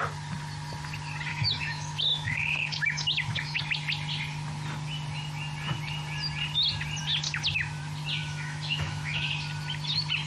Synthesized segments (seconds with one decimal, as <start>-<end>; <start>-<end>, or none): 1.3-3.6; 8.2-9.3